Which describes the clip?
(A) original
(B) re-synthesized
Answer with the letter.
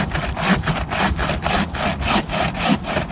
A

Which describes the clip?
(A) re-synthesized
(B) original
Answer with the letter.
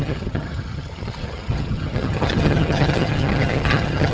A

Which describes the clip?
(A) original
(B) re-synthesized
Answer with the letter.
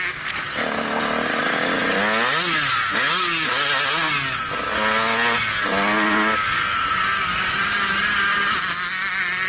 A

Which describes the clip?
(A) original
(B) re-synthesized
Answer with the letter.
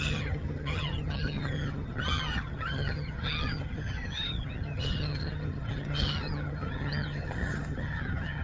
B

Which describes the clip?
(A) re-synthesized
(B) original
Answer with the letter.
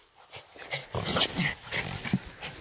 B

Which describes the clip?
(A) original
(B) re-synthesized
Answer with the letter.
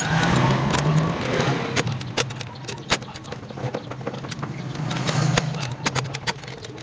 A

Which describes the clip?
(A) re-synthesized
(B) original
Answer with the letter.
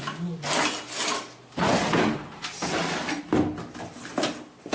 B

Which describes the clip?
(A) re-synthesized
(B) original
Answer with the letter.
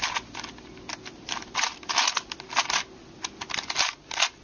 B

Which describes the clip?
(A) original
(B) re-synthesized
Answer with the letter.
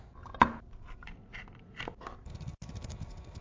A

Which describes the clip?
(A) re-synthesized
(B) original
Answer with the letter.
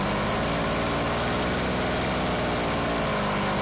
B